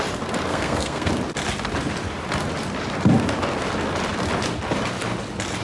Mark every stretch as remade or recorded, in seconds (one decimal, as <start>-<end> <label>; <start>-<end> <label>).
0.0-0.5 recorded; 0.5-1.1 remade; 1.1-5.6 recorded